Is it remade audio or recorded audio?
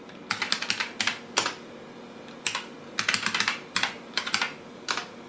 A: recorded